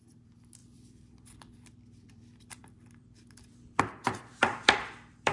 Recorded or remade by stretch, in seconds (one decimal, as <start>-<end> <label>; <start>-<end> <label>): 0.0-5.3 remade